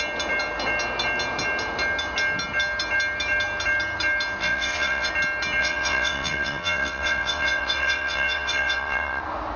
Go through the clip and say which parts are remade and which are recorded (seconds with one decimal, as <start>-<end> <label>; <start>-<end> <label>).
0.0-4.4 recorded; 4.4-5.1 remade; 5.1-5.6 recorded; 5.6-9.2 remade; 9.2-9.6 recorded